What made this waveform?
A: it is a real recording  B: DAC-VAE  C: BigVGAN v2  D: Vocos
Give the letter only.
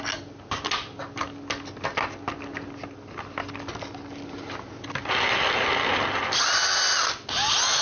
A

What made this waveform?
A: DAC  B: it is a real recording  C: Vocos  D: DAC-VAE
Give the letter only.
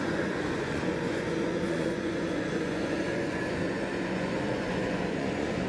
C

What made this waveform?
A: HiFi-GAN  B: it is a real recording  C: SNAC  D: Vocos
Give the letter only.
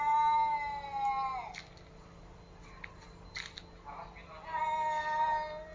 B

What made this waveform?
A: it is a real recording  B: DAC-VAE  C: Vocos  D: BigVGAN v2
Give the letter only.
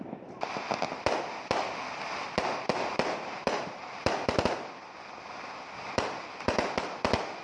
A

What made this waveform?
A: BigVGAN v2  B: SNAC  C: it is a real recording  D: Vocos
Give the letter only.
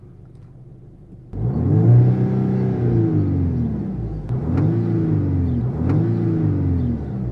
C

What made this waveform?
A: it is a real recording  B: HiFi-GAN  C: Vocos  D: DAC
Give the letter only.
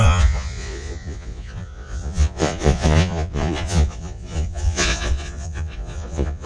C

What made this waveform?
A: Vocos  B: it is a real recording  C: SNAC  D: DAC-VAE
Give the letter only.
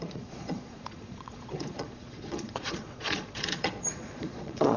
A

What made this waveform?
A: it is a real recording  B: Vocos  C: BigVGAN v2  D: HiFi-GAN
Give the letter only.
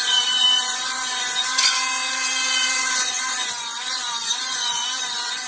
B